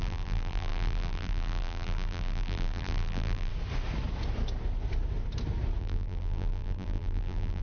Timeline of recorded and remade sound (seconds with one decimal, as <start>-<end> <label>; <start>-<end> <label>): 0.0-3.5 remade; 3.5-5.8 recorded; 5.8-7.6 remade